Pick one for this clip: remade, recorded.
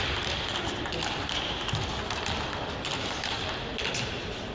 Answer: recorded